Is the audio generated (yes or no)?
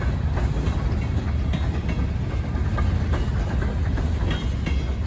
no